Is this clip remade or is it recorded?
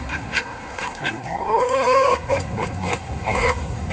remade